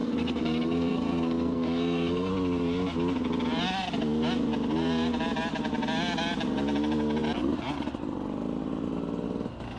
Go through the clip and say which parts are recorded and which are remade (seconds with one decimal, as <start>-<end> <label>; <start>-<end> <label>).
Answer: 0.0-2.3 remade; 2.3-9.8 recorded

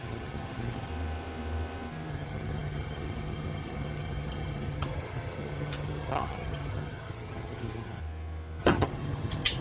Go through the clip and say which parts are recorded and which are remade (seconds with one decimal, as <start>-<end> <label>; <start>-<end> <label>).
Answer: 0.0-0.9 remade; 0.9-2.1 recorded; 2.1-8.0 remade; 8.0-8.6 recorded; 8.6-9.6 remade

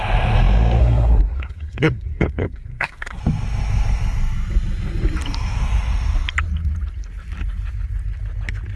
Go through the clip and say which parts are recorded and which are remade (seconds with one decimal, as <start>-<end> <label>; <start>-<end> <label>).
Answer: 0.0-0.8 recorded; 0.8-3.2 remade; 3.2-8.8 recorded